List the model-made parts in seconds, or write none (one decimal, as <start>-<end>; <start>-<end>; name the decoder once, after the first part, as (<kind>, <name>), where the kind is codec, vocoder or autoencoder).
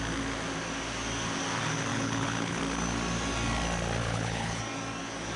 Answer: 1.9-2.6 (codec, HILCodec); 4.0-4.6